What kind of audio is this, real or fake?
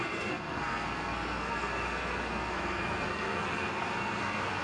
fake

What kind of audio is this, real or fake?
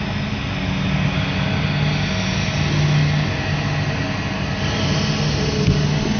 real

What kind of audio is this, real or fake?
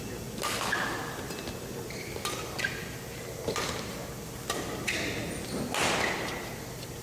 real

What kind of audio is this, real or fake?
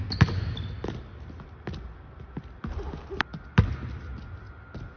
real